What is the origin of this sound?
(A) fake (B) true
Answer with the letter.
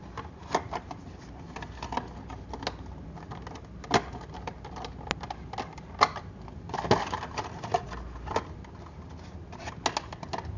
B